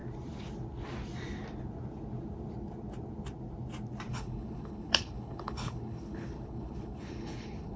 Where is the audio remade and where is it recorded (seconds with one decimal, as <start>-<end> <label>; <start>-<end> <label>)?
0.0-4.1 recorded; 4.1-7.8 remade